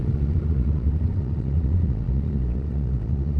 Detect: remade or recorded remade